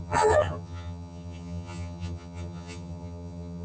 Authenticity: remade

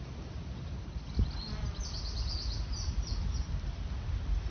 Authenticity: recorded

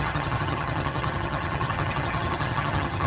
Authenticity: remade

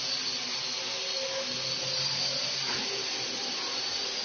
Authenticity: recorded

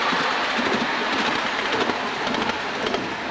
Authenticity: recorded